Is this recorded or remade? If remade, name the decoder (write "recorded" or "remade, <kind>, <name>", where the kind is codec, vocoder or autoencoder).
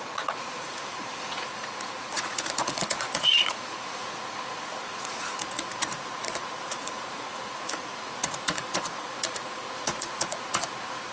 remade, vocoder, Vocos